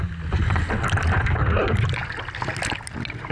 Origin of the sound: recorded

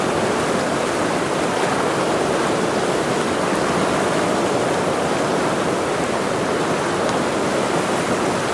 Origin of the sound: recorded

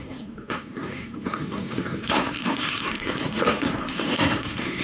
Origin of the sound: remade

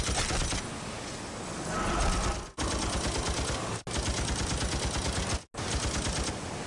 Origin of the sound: recorded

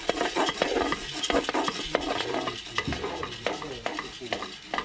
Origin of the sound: recorded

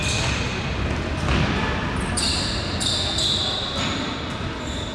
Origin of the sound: recorded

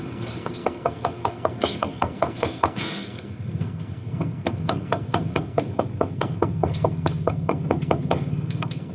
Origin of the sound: remade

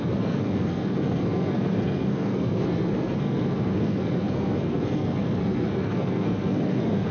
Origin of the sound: remade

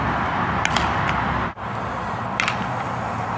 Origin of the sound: recorded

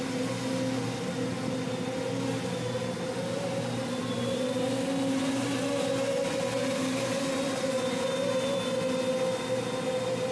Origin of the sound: recorded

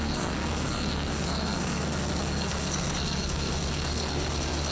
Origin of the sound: remade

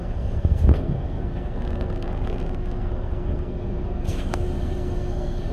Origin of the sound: remade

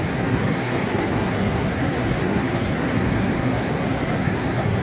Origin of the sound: remade